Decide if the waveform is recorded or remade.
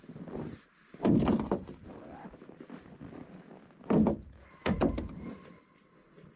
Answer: remade